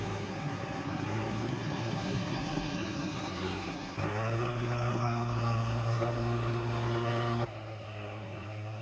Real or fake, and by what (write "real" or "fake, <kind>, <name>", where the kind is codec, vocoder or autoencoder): fake, codec, SNAC